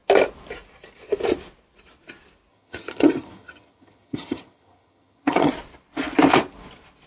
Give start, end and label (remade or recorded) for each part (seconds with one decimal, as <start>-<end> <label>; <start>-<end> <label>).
0.0-2.5 recorded; 2.5-5.5 remade; 5.5-7.1 recorded